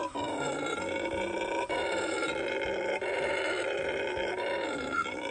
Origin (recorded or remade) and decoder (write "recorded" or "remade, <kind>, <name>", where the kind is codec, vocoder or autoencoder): remade, vocoder, BigVGAN v2